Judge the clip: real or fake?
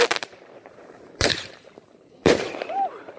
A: fake